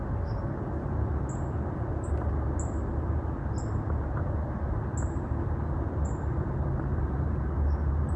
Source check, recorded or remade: recorded